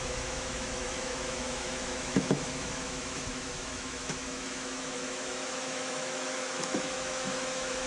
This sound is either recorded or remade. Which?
remade